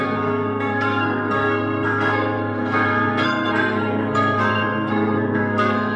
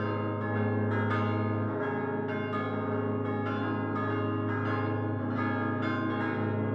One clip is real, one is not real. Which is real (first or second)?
second